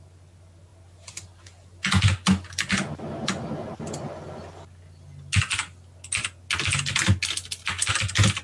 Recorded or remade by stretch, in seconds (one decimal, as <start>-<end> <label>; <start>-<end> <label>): 0.0-8.4 recorded